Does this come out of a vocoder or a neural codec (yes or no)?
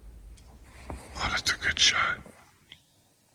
no